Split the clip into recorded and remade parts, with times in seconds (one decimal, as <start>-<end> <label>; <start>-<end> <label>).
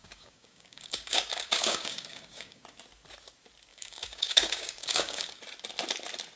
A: 0.0-2.6 remade; 2.6-3.7 recorded; 3.7-5.4 remade; 5.4-6.4 recorded